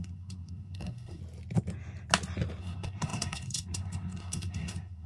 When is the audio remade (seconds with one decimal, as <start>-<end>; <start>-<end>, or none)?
0.0-1.2; 2.6-5.1